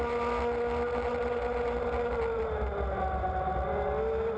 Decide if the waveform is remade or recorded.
recorded